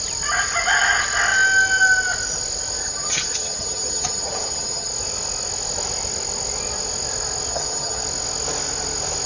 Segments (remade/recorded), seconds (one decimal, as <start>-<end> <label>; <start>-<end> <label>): 0.0-2.8 recorded; 2.8-4.9 remade; 4.9-7.5 recorded; 7.5-8.0 remade; 8.0-9.3 recorded